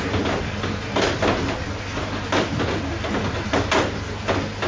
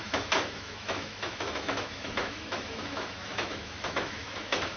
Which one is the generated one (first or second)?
second